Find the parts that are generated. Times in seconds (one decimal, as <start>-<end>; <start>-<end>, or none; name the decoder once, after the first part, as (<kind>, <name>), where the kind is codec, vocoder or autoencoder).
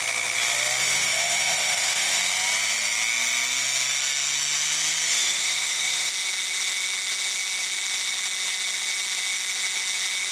0.8-2.2 (autoencoder, DAC-VAE); 5.1-6.1